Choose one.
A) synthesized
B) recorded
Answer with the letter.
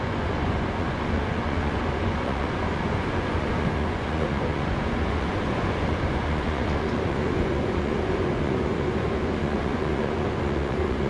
A